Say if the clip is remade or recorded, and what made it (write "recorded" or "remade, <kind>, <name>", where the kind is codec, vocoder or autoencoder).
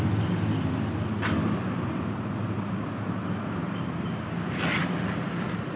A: recorded